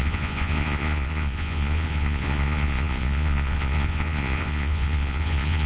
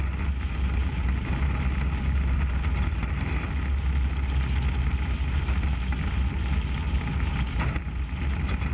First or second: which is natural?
second